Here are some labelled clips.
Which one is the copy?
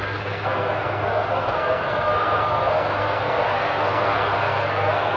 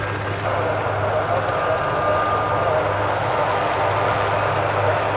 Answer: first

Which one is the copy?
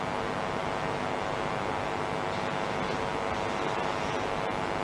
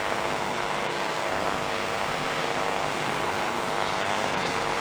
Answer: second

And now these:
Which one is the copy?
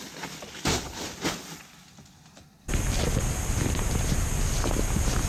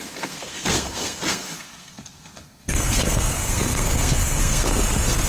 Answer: second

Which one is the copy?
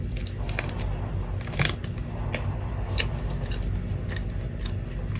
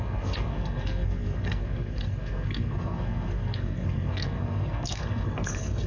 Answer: second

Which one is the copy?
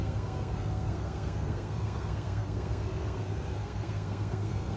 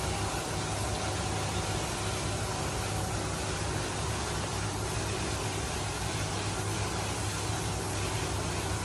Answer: first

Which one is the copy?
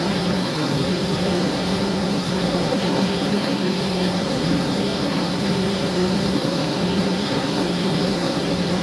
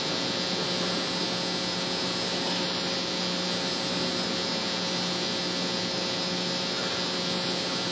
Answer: first